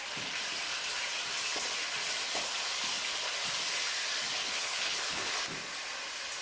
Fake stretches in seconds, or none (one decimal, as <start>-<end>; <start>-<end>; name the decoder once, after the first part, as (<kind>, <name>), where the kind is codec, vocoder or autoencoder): 4.4-5.3 (codec, HILCodec)

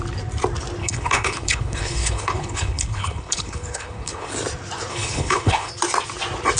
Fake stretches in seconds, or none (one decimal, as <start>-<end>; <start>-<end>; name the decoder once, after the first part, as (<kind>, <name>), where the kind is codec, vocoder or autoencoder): 0.8-4.3 (codec, HILCodec); 4.9-5.7

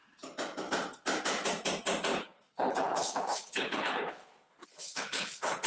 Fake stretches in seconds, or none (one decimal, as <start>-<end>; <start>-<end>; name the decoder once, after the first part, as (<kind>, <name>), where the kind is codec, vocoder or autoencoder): 2.1-5.7 (codec, HILCodec)

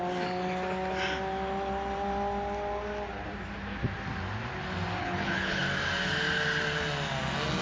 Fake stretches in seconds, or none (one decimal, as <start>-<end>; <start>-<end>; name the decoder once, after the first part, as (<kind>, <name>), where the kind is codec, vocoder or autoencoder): 5.0-5.6 (codec, HILCodec)

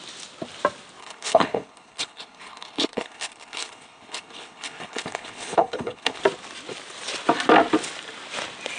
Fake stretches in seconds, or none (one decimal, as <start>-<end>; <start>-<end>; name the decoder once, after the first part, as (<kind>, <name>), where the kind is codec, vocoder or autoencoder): 1.0-6.2 (codec, HILCodec)

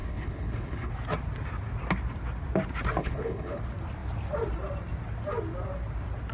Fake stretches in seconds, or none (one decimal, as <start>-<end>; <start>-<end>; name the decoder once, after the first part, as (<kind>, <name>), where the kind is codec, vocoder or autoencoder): 0.0-0.9 (codec, HILCodec); 3.0-3.6